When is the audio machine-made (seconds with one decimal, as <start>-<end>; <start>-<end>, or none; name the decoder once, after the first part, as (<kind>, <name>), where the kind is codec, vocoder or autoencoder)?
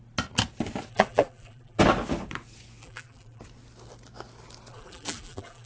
0.9-1.8 (vocoder, BigVGAN v2); 2.8-3.4; 4.7-5.7